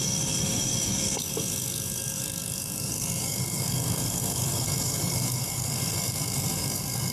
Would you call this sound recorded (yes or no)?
no